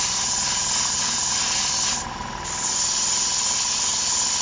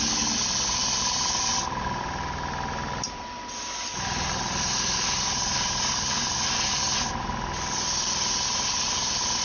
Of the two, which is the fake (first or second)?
second